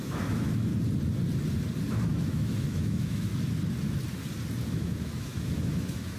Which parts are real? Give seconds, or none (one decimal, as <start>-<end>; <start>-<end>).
0.7-1.9; 3.3-4.7